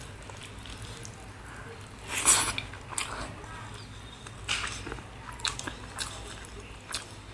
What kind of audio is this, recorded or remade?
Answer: recorded